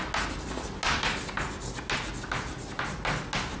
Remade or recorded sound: recorded